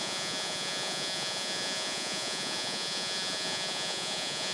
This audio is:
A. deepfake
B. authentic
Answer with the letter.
A